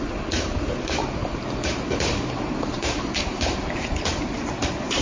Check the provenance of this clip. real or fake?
fake